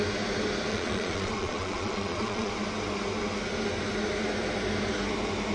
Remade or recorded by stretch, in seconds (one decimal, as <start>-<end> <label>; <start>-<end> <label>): 0.0-0.7 recorded; 0.7-2.5 remade; 2.5-5.5 recorded